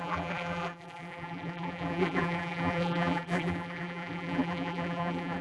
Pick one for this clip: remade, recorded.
remade